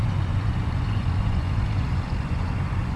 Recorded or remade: remade